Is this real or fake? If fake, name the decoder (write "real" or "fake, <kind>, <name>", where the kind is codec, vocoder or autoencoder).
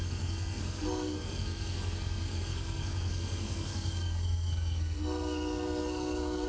fake, codec, SNAC